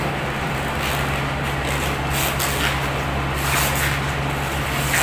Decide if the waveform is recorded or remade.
recorded